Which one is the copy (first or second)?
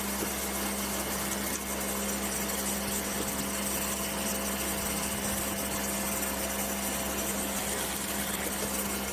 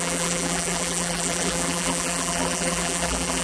second